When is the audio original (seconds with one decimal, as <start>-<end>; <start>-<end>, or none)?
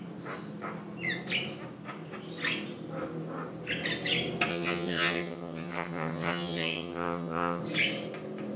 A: 0.0-4.5; 7.6-8.6